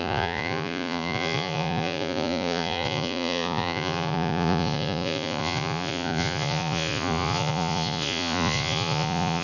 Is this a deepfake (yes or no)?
yes